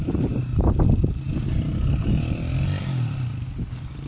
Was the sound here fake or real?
real